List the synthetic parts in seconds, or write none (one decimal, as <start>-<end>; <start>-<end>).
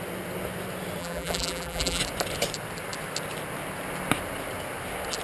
1.0-2.0